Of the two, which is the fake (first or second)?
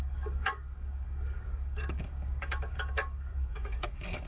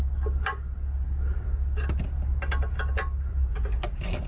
first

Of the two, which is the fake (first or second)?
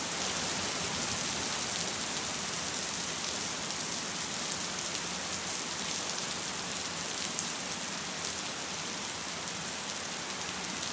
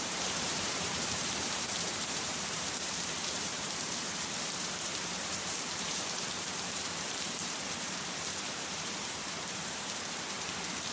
second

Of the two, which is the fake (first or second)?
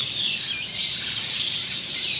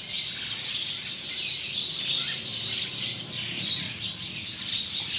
first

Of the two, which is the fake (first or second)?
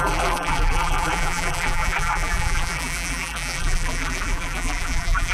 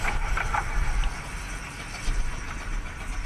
first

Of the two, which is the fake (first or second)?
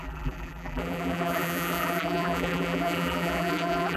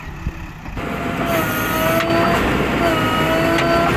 first